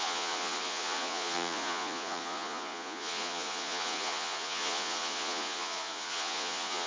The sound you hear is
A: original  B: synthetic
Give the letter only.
B